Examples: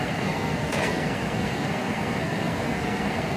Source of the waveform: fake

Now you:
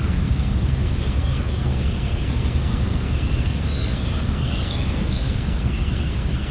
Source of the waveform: fake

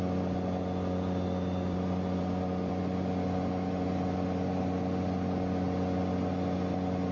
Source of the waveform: real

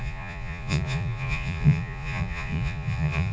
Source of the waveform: fake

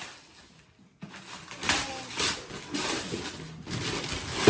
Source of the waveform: real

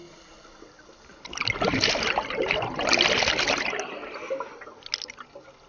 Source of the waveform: real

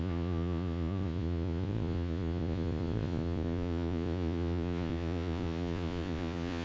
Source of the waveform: fake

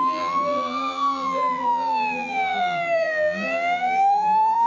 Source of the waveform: fake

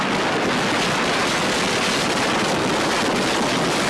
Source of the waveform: real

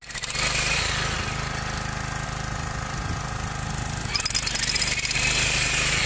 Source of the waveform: real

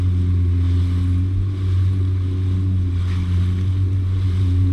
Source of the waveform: real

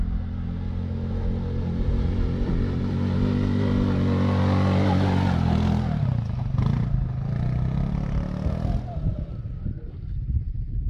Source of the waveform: real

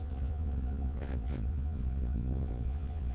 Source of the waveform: fake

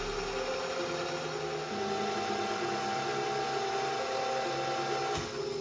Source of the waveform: real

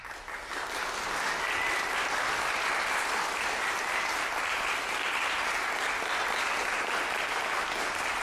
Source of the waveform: real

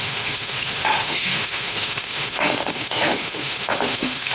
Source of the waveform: fake